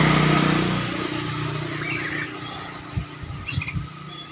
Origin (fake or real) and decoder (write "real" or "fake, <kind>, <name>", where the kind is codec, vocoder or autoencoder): real